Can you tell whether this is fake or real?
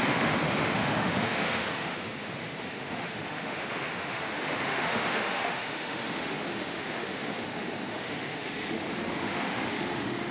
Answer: fake